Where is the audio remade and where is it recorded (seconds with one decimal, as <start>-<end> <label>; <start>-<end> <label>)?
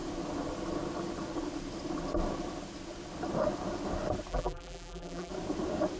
0.0-4.3 recorded; 4.3-5.3 remade; 5.3-6.0 recorded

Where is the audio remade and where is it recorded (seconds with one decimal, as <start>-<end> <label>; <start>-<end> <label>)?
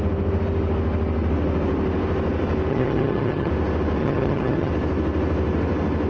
0.0-2.7 recorded; 2.7-3.5 remade; 3.5-4.0 recorded; 4.0-4.7 remade; 4.7-6.1 recorded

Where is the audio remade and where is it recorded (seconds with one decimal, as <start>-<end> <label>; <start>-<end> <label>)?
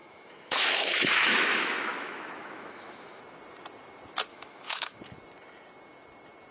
0.0-3.2 remade; 3.2-4.3 recorded; 4.3-5.0 remade; 5.0-6.5 recorded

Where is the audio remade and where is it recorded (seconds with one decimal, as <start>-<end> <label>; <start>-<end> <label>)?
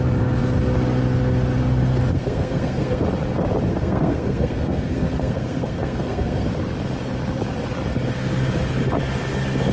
0.0-2.1 recorded; 2.1-3.0 remade; 3.0-3.7 recorded; 3.7-6.5 remade; 6.5-9.7 recorded